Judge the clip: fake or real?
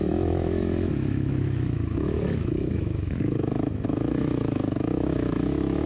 fake